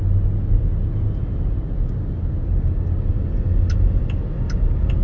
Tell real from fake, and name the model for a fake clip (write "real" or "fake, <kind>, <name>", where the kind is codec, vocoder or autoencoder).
real